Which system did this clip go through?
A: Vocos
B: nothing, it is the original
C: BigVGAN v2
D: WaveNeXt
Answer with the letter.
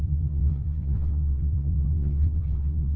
D